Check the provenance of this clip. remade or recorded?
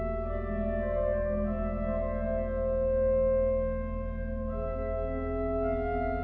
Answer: recorded